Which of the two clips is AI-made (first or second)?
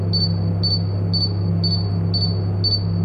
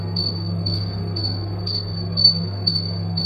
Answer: second